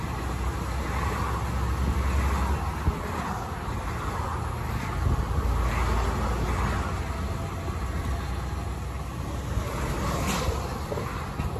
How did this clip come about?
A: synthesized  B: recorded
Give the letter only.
B